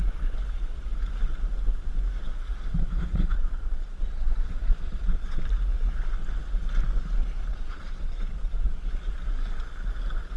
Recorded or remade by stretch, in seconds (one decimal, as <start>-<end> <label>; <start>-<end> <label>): 0.0-3.1 recorded; 3.1-5.4 remade; 5.4-7.5 recorded; 7.5-8.9 remade; 8.9-10.4 recorded